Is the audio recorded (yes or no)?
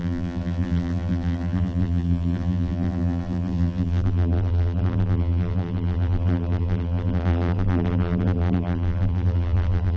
no